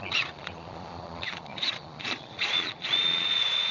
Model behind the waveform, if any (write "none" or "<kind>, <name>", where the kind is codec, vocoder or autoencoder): vocoder, Vocos